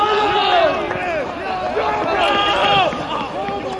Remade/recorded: recorded